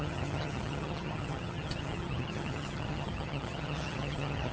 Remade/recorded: remade